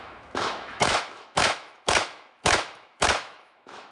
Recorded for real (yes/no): no